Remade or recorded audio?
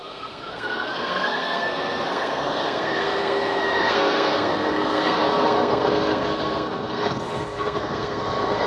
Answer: remade